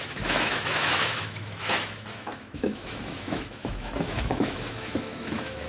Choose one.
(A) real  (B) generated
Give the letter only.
B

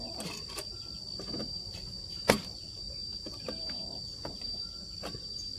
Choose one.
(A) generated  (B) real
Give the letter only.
B